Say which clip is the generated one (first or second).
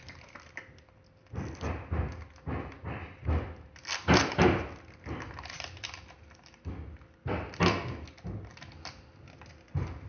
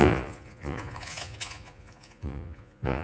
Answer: second